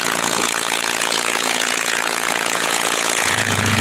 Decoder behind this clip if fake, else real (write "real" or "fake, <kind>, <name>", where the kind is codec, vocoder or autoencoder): fake, vocoder, Vocos